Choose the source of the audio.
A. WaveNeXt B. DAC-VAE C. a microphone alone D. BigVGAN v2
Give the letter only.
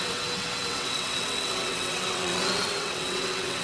A